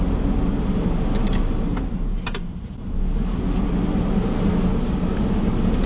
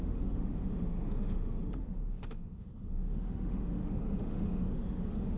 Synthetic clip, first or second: second